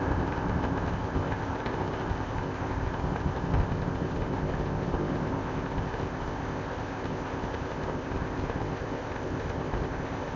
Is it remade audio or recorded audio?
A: remade